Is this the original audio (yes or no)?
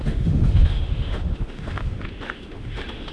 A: no